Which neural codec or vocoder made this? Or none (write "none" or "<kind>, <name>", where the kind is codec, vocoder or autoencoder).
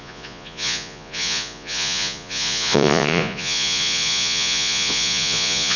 vocoder, Vocos